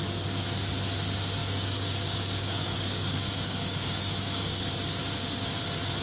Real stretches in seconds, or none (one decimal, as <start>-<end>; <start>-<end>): 0.0-1.4; 4.7-6.0